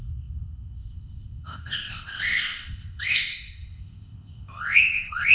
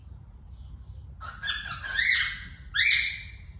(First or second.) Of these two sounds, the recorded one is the second